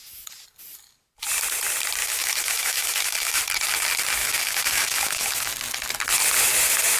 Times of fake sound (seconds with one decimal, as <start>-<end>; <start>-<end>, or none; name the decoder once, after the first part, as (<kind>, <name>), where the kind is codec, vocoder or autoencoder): 2.0-3.4 (autoencoder, DAC-VAE); 4.2-5.5